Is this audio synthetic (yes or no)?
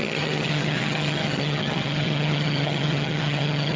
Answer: yes